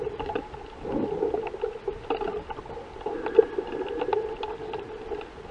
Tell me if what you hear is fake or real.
real